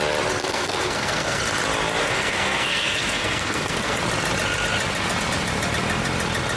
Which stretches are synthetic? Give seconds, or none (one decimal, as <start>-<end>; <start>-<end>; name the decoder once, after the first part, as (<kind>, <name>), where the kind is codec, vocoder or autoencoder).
0.4-1.4 (codec, SNAC); 2.0-4.0

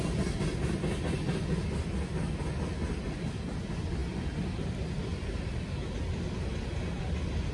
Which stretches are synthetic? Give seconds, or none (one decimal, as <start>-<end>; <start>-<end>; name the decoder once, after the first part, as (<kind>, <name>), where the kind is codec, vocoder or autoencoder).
none